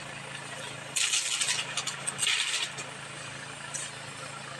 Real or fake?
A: real